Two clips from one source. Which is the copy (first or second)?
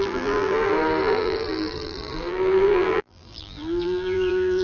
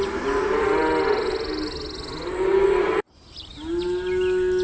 first